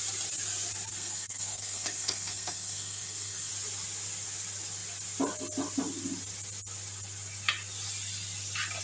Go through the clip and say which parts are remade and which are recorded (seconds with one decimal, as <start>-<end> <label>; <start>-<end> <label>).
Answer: 0.0-0.9 recorded; 0.9-3.5 remade; 3.5-8.8 recorded

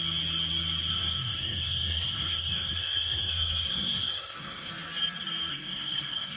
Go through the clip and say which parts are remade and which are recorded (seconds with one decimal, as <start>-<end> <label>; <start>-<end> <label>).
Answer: 0.0-0.9 recorded; 0.9-4.7 remade; 4.7-5.5 recorded; 5.5-6.4 remade

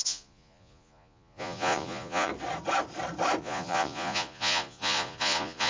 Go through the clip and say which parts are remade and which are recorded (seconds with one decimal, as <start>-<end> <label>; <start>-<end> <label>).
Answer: 0.0-2.3 remade; 2.3-3.4 recorded; 3.4-5.7 remade

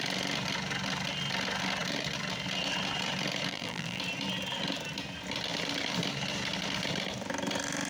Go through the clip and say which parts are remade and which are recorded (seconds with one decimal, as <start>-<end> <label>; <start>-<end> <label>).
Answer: 0.0-3.5 recorded; 3.5-4.0 remade; 4.0-7.9 recorded